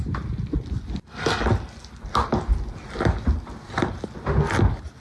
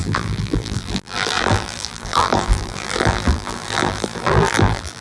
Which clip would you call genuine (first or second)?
first